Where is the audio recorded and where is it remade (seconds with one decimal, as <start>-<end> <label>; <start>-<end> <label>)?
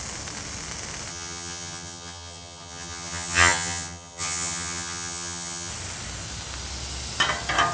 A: 0.0-1.1 recorded; 1.1-5.7 remade; 5.7-7.7 recorded